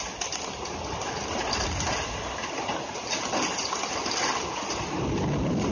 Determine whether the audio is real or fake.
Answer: real